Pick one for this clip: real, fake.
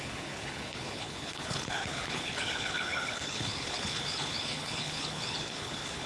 fake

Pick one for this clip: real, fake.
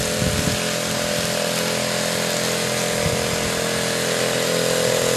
real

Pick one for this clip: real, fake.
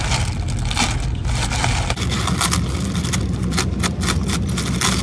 real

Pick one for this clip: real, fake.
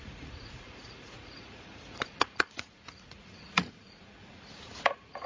fake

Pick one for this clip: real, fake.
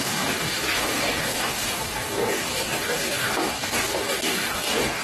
fake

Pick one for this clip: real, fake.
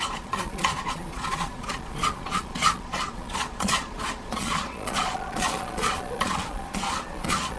fake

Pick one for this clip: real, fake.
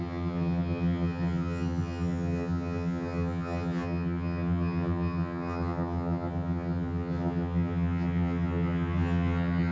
fake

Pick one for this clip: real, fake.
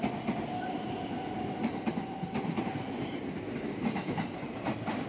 real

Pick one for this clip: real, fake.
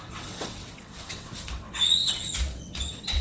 fake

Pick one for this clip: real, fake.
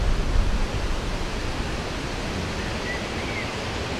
real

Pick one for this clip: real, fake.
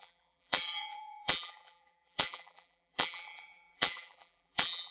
fake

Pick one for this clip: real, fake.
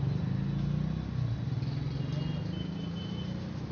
real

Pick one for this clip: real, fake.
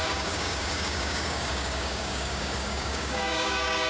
fake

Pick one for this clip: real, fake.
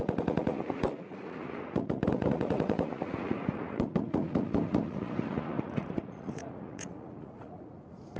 fake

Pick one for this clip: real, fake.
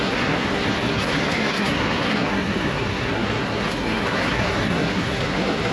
fake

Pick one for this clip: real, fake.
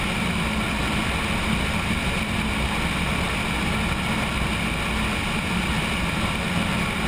real